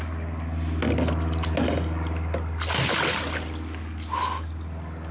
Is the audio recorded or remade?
recorded